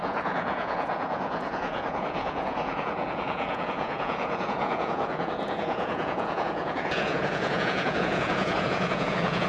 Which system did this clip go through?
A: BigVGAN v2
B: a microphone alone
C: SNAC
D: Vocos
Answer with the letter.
D